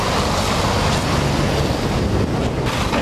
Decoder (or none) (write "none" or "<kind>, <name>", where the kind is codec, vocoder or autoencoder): none